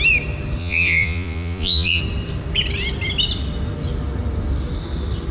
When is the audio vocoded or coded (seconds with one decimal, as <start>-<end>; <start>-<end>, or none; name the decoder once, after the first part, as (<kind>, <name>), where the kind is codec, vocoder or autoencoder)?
0.6-2.0 (vocoder, Vocos)